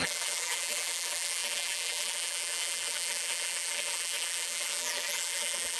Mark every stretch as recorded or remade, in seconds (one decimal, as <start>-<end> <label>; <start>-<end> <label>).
0.0-5.8 remade